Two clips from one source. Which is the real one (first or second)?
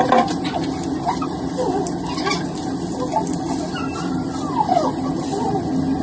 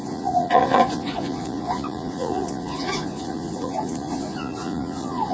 first